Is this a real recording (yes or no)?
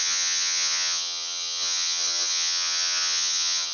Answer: no